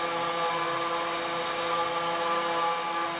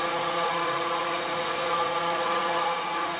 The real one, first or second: first